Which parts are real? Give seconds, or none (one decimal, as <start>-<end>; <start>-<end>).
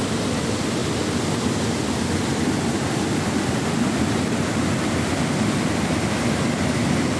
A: 0.0-7.2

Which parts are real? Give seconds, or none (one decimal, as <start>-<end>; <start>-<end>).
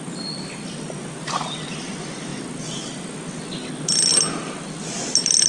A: 0.0-5.5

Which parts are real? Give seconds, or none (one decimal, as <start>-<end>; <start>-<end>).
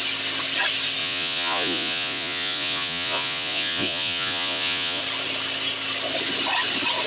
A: 0.0-1.0; 5.0-7.1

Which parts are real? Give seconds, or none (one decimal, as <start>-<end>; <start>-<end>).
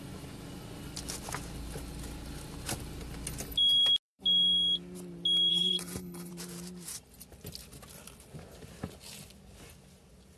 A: 0.0-5.5; 6.3-10.4